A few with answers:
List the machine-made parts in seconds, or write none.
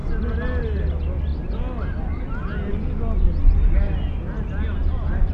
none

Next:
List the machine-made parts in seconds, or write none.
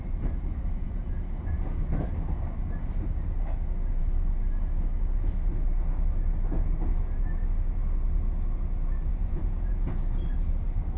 0.8-2.1 (vocoder, Vocos); 9.1-9.9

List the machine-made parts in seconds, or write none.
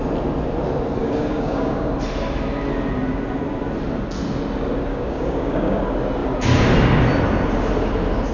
1.0-1.9 (codec, DAC); 4.9-5.8